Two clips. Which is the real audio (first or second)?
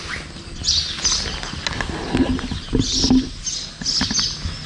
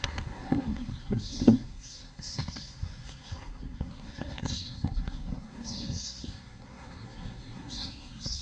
first